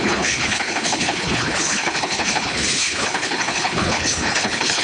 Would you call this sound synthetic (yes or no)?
yes